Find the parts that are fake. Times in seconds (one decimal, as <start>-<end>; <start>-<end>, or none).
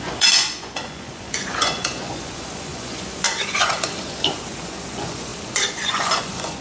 0.0-6.6